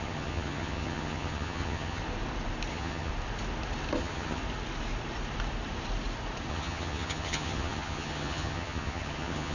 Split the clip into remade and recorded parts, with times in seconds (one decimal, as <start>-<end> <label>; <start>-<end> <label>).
0.0-2.0 remade; 2.0-2.7 recorded; 2.7-3.1 remade; 3.1-4.0 recorded; 4.0-4.4 remade; 4.4-6.5 recorded; 6.5-9.5 remade